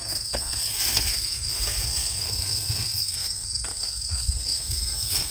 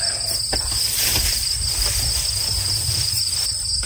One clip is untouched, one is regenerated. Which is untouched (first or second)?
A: second